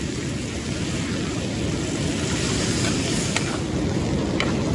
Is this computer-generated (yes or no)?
no